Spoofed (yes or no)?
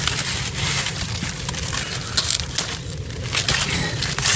no